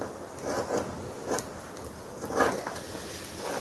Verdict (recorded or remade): recorded